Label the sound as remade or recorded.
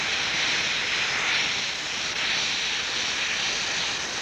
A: recorded